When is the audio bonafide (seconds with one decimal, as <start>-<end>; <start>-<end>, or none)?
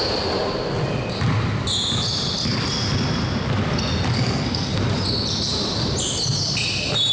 0.0-4.1; 4.8-7.1